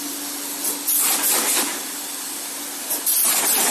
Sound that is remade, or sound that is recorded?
recorded